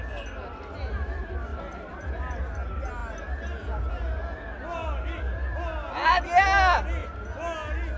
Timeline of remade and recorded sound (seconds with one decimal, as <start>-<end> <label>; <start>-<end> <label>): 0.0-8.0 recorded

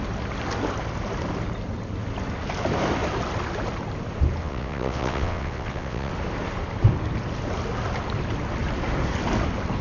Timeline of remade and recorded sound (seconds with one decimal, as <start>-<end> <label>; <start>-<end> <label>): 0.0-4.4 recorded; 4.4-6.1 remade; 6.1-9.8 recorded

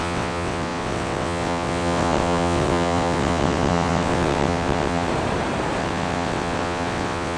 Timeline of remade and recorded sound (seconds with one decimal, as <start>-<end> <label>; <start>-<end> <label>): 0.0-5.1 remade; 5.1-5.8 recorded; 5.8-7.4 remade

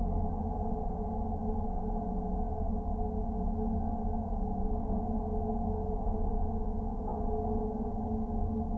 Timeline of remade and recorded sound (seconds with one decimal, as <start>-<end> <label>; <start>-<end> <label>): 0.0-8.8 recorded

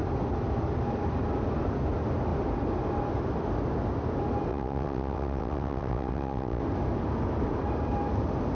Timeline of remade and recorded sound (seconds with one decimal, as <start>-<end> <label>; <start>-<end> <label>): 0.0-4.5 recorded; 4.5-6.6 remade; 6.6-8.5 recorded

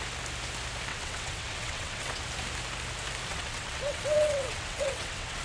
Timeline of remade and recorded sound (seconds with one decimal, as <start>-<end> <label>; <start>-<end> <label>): 0.0-0.9 recorded; 0.9-2.2 remade; 2.2-3.3 recorded; 3.3-5.4 remade

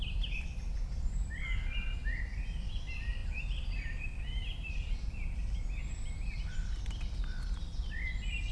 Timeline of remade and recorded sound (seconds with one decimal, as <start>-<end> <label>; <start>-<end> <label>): 0.0-8.5 recorded

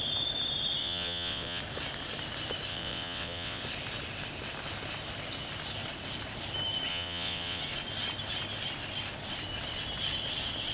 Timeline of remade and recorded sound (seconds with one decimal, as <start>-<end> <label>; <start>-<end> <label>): 0.0-0.8 recorded; 0.8-1.6 remade; 1.6-2.7 recorded; 2.7-3.6 remade; 3.6-6.9 recorded; 6.9-7.6 remade; 7.6-10.7 recorded